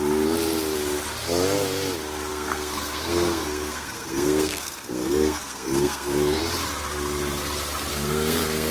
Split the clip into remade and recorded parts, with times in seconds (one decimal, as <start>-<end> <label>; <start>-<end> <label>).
0.0-2.3 recorded; 2.3-6.4 remade; 6.4-7.9 recorded; 7.9-8.7 remade